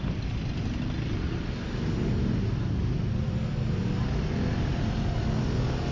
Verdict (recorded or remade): recorded